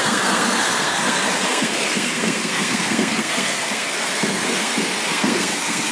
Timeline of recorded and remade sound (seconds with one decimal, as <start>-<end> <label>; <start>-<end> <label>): 0.0-5.9 remade